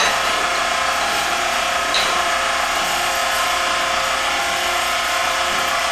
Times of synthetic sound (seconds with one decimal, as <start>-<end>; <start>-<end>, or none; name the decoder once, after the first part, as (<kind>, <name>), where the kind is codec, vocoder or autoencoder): 5.2-5.9 (vocoder, BigVGAN v2)